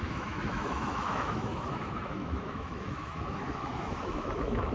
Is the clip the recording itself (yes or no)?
no